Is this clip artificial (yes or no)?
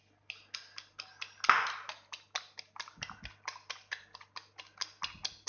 no